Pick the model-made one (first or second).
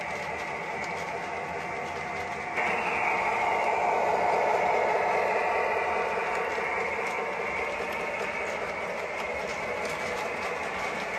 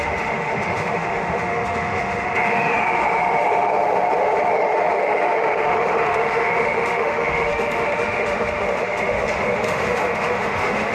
second